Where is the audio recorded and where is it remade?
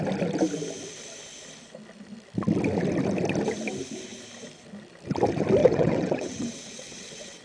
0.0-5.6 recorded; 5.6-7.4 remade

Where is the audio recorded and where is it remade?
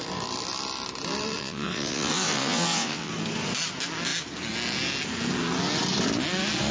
0.0-1.4 recorded; 1.4-3.1 remade; 3.1-6.7 recorded